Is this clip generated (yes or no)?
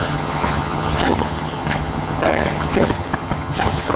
yes